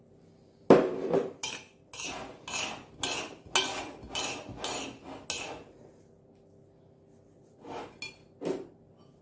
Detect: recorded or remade recorded